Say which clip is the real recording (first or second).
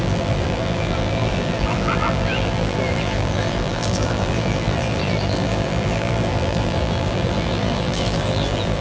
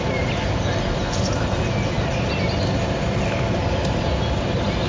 second